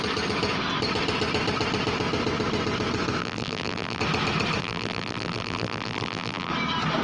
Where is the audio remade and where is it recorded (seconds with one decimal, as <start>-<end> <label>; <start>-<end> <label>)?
0.0-3.2 recorded; 3.2-4.0 remade; 4.0-4.6 recorded; 4.6-6.5 remade; 6.5-7.0 recorded